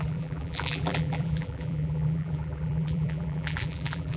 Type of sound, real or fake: fake